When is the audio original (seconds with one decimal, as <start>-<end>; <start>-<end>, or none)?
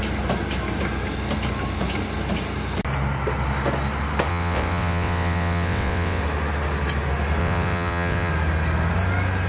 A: 0.0-4.3; 6.2-7.4; 8.3-9.5